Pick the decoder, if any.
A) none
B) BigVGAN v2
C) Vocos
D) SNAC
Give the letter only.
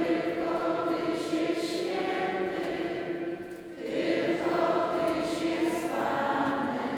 C